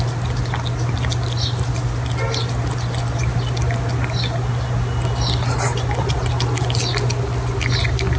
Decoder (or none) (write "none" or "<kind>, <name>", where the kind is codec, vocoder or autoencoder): none